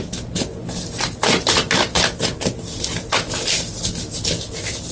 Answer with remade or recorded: recorded